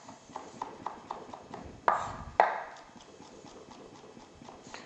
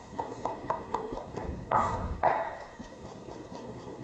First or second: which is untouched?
first